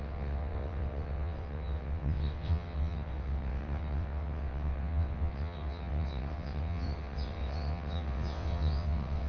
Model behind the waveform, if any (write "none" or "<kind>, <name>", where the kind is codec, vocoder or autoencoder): vocoder, WaveNeXt